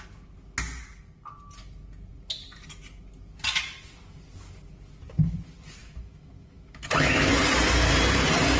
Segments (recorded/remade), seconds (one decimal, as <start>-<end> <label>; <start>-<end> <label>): 0.0-5.8 recorded; 5.8-7.3 remade; 7.3-8.6 recorded

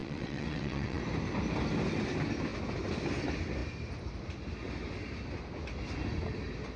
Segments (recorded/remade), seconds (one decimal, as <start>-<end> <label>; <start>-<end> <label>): 0.0-1.0 remade; 1.0-6.8 recorded

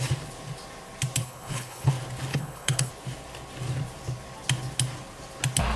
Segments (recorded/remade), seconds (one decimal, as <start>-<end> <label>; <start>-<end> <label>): 0.0-1.2 recorded; 1.2-1.9 remade; 1.9-2.3 recorded; 2.3-2.9 remade; 2.9-5.8 recorded

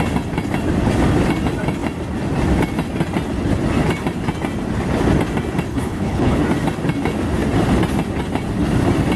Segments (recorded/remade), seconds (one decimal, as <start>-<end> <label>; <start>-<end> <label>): 0.0-5.7 recorded; 5.7-6.4 remade; 6.4-9.2 recorded

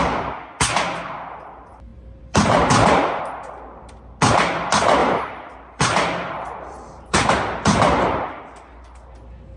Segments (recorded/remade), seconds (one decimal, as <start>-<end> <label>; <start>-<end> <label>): 0.0-1.9 recorded; 1.9-3.2 remade; 3.2-5.0 recorded; 5.0-8.4 remade; 8.4-9.6 recorded

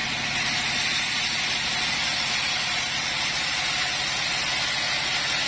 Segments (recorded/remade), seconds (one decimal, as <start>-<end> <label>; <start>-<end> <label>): 0.0-5.5 recorded

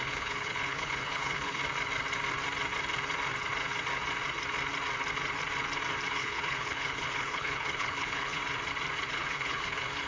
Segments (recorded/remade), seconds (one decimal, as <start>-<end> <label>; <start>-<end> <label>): 0.0-1.6 remade; 1.6-6.1 recorded; 6.1-8.4 remade; 8.4-9.1 recorded; 9.1-10.1 remade